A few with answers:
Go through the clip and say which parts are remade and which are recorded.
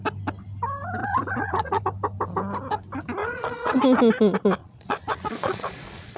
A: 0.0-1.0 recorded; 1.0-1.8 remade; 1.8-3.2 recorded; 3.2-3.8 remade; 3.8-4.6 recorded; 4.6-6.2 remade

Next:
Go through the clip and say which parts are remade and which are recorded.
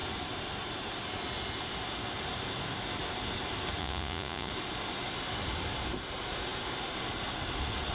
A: 0.0-3.8 recorded; 3.8-4.5 remade; 4.5-7.9 recorded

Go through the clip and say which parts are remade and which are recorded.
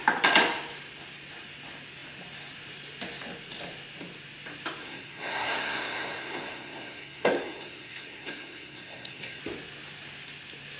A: 0.0-4.8 recorded; 4.8-9.4 remade; 9.4-10.8 recorded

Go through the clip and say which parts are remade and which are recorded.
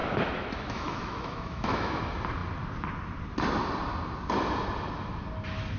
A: 0.0-2.0 remade; 2.0-5.8 recorded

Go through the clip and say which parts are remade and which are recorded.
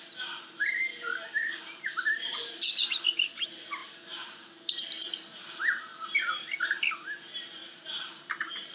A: 0.0-0.9 remade; 0.9-1.6 recorded; 1.6-5.9 remade; 5.9-6.9 recorded; 6.9-7.6 remade; 7.6-8.1 recorded; 8.1-8.7 remade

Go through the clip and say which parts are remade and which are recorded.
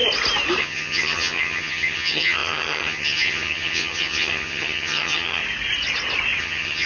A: 0.0-0.6 recorded; 0.6-5.4 remade; 5.4-6.4 recorded; 6.4-6.9 remade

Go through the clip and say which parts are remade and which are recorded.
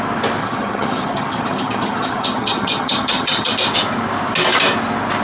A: 0.0-0.4 recorded; 0.4-3.5 remade; 3.5-5.2 recorded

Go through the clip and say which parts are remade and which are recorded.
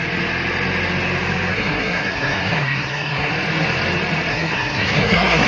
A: 0.0-1.5 recorded; 1.5-3.3 remade; 3.3-4.3 recorded; 4.3-5.5 remade